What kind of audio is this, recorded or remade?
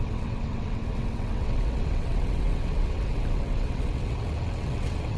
remade